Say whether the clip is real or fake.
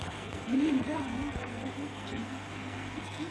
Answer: fake